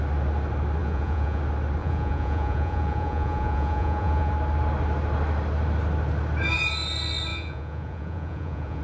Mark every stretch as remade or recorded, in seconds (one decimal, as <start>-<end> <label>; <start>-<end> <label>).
0.0-0.8 recorded; 0.8-1.4 remade; 1.4-1.8 recorded; 1.8-4.3 remade; 4.3-7.3 recorded; 7.3-8.8 remade

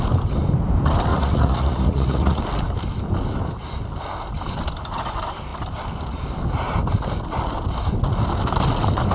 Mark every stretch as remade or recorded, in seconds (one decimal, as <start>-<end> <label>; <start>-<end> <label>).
0.0-1.1 recorded; 1.1-2.4 remade; 2.4-9.1 recorded

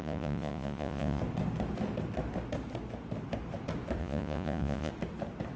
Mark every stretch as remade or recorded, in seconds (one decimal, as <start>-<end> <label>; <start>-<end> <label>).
0.0-1.2 remade; 1.2-4.0 recorded; 4.0-4.9 remade; 4.9-5.6 recorded

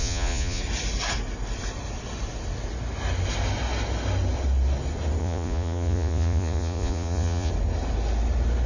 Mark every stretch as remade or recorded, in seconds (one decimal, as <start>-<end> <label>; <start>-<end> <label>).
0.0-0.6 remade; 0.6-5.2 recorded; 5.2-7.5 remade; 7.5-8.7 recorded

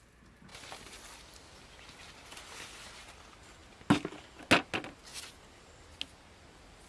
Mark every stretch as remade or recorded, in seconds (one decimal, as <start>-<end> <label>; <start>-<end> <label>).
0.0-6.9 recorded

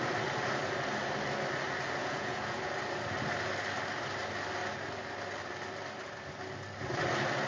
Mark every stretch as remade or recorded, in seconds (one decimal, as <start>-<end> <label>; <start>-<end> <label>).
0.0-2.0 recorded; 2.0-2.7 remade; 2.7-7.5 recorded